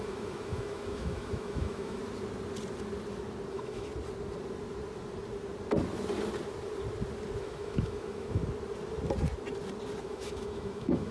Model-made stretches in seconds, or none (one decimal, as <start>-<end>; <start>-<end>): 0.0-2.0; 3.5-3.9; 7.4-8.4; 10.0-11.1